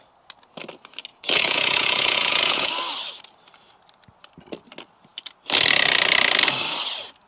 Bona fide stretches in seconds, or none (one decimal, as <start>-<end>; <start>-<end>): 0.0-1.1; 2.7-7.3